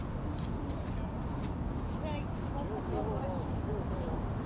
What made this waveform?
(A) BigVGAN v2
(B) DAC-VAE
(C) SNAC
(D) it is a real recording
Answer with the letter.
D